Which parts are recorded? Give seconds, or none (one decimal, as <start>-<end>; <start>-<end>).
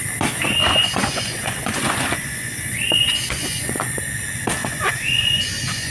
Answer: 0.0-0.6; 4.0-4.6